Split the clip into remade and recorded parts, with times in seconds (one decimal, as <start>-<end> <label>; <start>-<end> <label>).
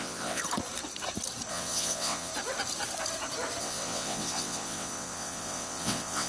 0.0-0.4 remade; 0.4-1.5 recorded; 1.5-2.3 remade; 2.3-3.6 recorded; 3.6-6.3 remade